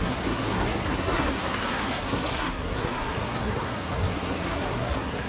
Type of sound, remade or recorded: remade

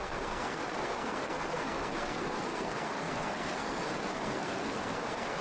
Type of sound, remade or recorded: remade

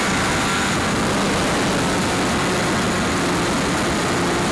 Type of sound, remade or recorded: recorded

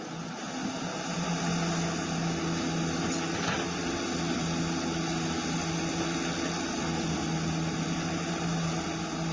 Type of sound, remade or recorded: recorded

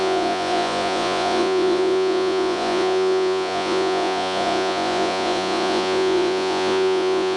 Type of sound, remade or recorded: remade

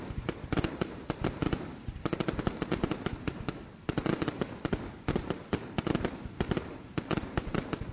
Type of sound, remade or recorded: remade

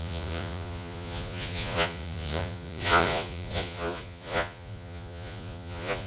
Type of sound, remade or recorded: remade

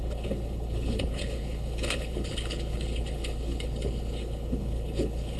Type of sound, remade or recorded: remade